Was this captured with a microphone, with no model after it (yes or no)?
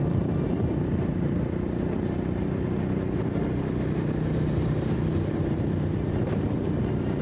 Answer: no